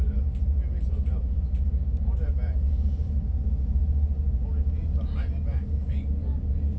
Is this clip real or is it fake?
real